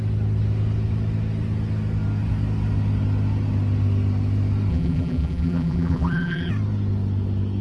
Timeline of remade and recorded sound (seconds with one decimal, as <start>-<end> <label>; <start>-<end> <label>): 0.0-4.7 recorded; 4.7-6.5 remade; 6.5-7.6 recorded